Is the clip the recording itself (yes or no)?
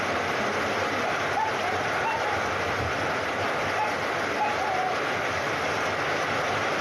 yes